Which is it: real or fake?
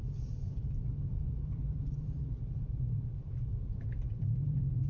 fake